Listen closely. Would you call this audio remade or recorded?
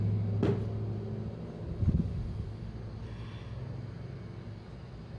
recorded